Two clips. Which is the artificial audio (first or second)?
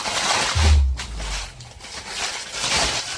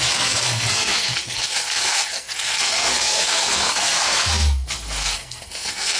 second